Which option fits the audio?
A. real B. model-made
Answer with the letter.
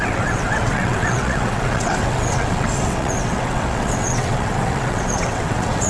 B